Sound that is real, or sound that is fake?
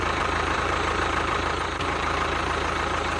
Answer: fake